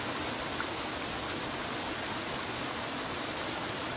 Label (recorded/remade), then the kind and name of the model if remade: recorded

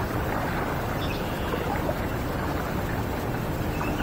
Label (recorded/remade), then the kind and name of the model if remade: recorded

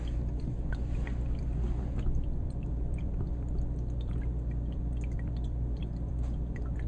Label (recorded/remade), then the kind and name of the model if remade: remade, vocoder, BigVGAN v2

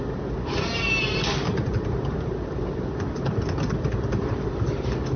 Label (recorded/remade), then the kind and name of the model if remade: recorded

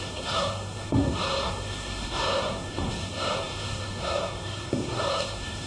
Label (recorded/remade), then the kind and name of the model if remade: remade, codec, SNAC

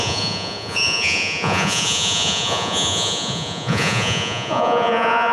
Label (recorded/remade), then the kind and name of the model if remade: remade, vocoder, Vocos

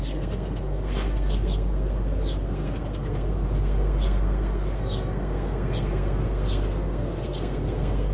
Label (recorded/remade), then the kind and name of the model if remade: remade, codec, SNAC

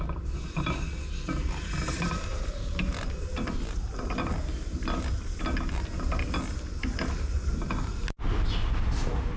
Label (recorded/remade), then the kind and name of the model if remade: recorded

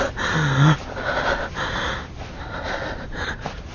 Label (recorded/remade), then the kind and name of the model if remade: recorded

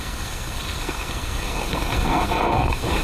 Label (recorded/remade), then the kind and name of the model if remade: remade, codec, SNAC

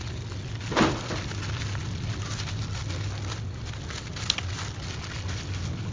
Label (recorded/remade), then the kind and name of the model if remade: recorded